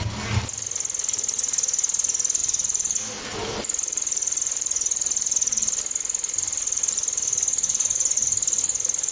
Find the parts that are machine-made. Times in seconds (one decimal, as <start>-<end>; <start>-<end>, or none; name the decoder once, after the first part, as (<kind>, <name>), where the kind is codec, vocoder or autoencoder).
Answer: 2.4-6.8 (vocoder, BigVGAN v2)